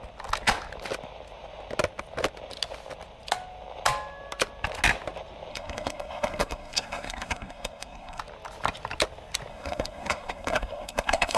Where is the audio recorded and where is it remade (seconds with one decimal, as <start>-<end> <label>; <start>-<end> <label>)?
0.0-5.5 recorded; 5.5-8.2 remade; 8.2-9.5 recorded; 9.5-11.4 remade